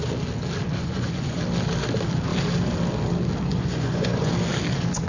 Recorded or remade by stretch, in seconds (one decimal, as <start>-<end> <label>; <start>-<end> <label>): 0.0-0.8 recorded; 0.8-1.4 remade; 1.4-3.5 recorded; 3.5-4.3 remade; 4.3-5.1 recorded